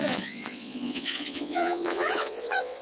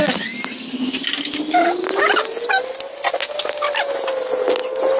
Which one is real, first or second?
second